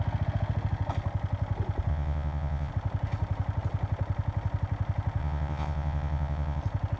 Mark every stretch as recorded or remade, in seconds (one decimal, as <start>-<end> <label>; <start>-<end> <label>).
0.0-1.9 recorded; 1.9-2.7 remade; 2.7-5.2 recorded; 5.2-6.6 remade; 6.6-7.0 recorded